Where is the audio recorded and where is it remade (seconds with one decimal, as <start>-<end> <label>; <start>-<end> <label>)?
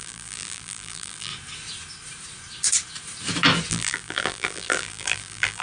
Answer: 0.0-1.3 remade; 1.3-3.7 recorded; 3.7-5.6 remade